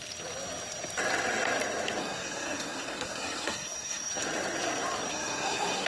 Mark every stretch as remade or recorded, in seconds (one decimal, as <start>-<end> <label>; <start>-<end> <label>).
0.0-2.0 recorded; 2.0-4.1 remade; 4.1-5.1 recorded; 5.1-5.9 remade